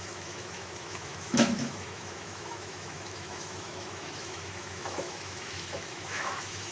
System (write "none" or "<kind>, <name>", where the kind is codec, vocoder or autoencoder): autoencoder, DAC-VAE